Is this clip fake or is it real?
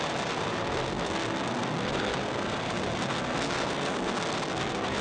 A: fake